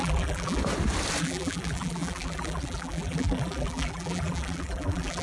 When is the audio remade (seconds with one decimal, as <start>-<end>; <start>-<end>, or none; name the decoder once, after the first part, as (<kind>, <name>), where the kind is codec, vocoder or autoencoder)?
0.0-0.6 (vocoder, BigVGAN v2); 1.2-5.2